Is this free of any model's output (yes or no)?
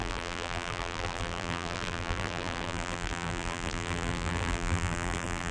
no